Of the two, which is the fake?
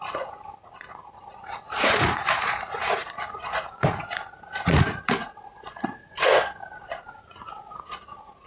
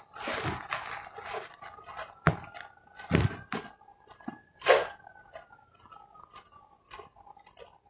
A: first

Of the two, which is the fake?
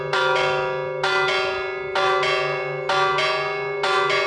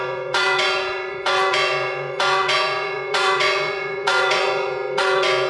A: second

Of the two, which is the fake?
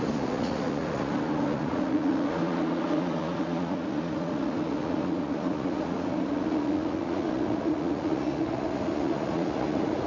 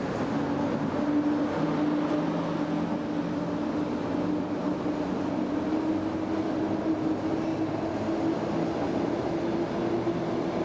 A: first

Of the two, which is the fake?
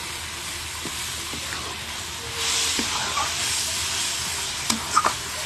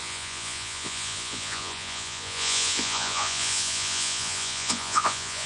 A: second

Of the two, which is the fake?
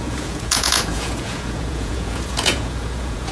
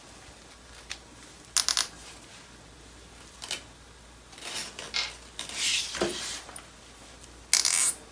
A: first